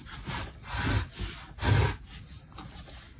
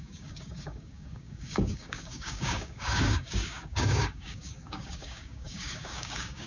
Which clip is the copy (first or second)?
second